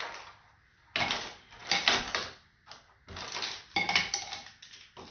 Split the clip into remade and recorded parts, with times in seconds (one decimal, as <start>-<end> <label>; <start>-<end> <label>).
0.0-5.1 recorded

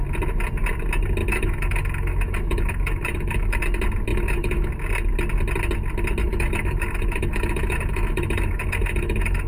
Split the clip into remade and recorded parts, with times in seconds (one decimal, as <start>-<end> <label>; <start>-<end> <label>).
0.0-1.2 recorded; 1.2-3.6 remade; 3.6-4.1 recorded; 4.1-4.7 remade; 4.7-6.2 recorded; 6.2-9.5 remade

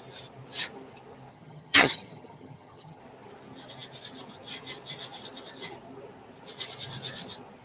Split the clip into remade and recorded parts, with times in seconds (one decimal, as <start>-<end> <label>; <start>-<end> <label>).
0.0-1.3 recorded; 1.3-3.0 remade; 3.0-7.6 recorded

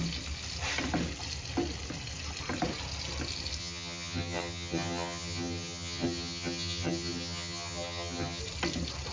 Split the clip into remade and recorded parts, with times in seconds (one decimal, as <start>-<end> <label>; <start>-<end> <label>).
0.0-3.6 recorded; 3.6-8.4 remade; 8.4-9.1 recorded

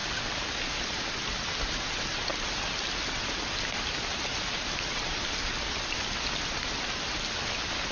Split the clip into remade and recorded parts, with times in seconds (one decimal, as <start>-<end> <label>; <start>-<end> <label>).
0.0-7.9 recorded

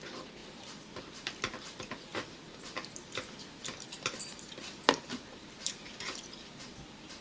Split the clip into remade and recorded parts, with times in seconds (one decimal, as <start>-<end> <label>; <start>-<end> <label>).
0.0-7.2 remade

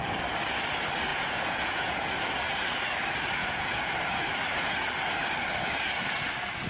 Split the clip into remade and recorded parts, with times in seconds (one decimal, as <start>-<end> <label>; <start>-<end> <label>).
0.0-1.1 recorded; 1.1-2.1 remade; 2.1-3.4 recorded; 3.4-3.9 remade; 3.9-6.7 recorded

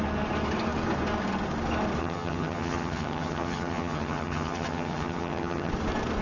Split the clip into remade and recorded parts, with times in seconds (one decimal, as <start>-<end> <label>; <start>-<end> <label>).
0.0-2.0 recorded; 2.0-5.7 remade; 5.7-6.2 recorded